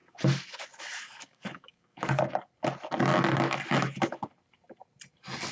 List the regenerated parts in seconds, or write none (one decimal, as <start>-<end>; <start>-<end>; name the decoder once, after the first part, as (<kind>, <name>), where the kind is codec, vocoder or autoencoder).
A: 0.0-2.2 (codec, DAC)